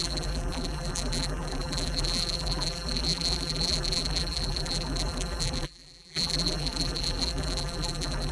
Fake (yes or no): yes